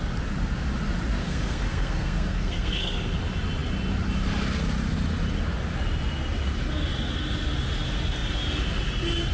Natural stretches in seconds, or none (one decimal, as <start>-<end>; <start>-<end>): 0.0-1.2; 3.2-9.3